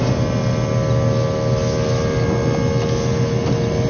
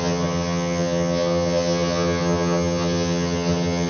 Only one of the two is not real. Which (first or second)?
second